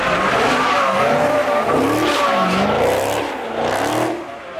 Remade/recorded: recorded